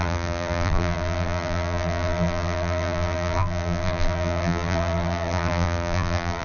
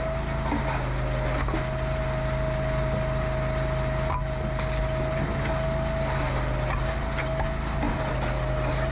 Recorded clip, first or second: second